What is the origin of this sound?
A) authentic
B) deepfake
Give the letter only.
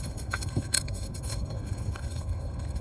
B